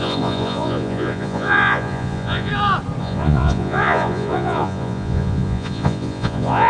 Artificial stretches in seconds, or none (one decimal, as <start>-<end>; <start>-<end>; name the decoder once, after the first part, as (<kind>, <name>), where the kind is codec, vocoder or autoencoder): 0.0-2.5 (vocoder, Vocos); 3.0-6.7